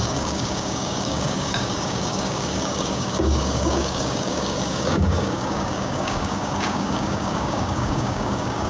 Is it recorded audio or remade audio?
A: remade